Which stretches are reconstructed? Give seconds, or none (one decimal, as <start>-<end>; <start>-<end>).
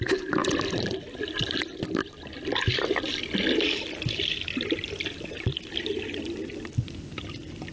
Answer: none